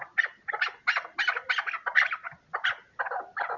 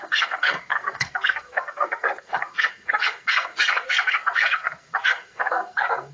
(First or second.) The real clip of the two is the first